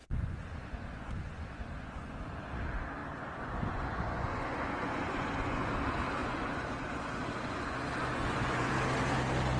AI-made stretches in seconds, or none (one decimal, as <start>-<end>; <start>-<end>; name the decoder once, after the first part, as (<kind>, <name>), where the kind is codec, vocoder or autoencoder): 0.0-2.6 (vocoder, Vocos); 3.0-5.7; 6.2-8.7